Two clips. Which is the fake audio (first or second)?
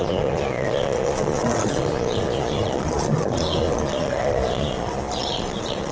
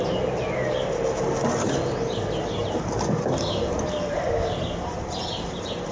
first